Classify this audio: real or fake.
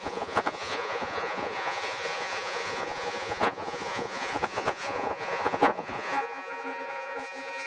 fake